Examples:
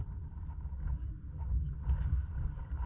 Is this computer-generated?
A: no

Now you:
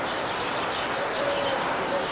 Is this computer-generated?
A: no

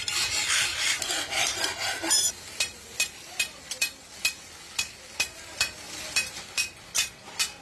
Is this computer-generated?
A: yes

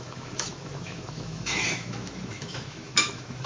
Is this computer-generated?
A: yes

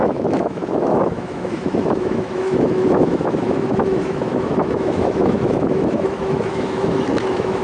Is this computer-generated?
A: yes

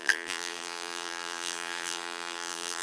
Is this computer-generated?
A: yes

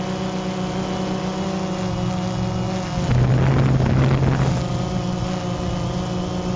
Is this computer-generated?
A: no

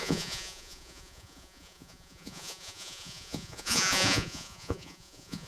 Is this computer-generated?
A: yes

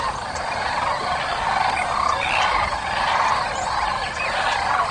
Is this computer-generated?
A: no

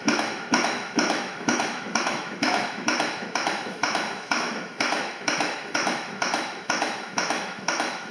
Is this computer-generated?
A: yes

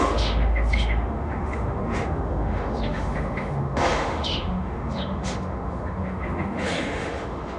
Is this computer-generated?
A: yes